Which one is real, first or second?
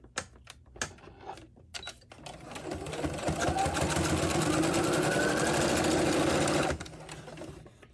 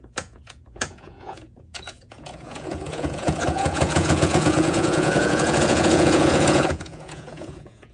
first